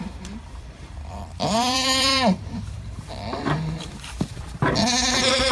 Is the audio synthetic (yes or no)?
yes